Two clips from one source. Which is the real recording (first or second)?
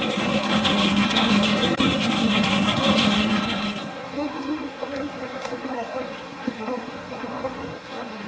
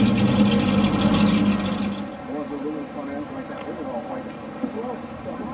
second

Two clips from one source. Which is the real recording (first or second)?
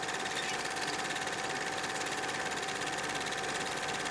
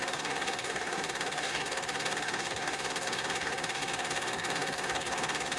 first